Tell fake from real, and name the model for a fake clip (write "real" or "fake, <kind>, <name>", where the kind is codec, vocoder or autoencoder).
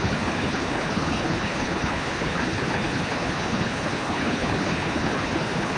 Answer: fake, codec, HILCodec